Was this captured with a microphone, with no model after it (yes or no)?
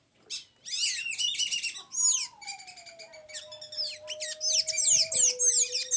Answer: yes